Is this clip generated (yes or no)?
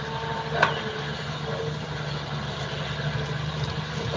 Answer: no